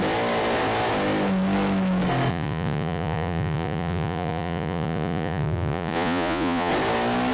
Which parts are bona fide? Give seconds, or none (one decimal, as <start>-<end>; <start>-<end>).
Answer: 0.0-2.3; 6.7-7.3